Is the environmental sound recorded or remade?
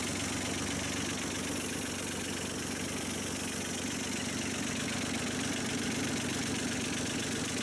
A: recorded